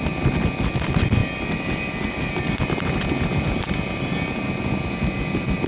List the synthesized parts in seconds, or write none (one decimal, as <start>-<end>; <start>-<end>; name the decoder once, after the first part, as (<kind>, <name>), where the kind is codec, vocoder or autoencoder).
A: none